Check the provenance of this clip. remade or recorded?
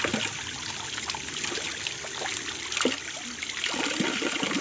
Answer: recorded